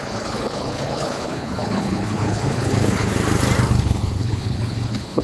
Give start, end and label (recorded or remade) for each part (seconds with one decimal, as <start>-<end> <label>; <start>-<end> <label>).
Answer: 0.0-3.1 remade; 3.1-3.8 recorded; 3.8-5.2 remade